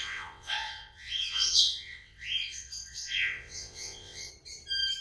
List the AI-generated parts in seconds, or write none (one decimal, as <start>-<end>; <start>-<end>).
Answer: 0.0-4.3